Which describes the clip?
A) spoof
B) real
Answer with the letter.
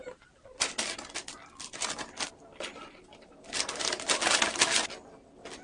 B